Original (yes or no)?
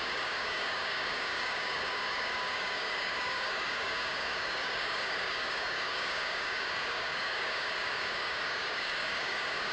no